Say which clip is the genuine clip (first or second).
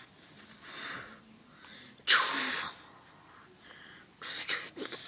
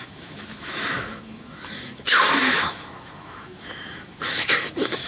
first